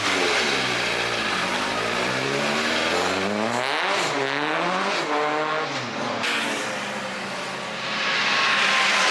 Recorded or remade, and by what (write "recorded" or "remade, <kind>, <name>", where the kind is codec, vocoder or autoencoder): recorded